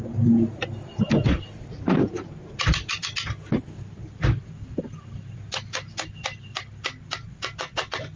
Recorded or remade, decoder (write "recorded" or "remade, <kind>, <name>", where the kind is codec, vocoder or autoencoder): recorded